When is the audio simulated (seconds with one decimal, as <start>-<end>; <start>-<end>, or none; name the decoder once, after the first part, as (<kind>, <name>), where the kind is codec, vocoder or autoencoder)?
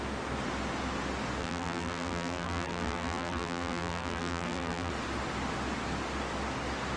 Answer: 1.4-4.9 (vocoder, BigVGAN v2)